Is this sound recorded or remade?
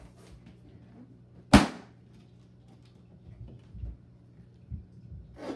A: recorded